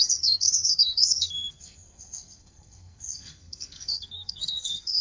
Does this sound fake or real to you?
fake